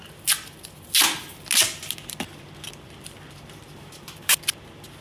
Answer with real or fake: real